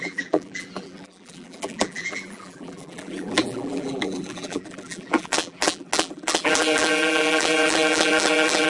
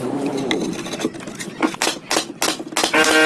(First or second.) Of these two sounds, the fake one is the first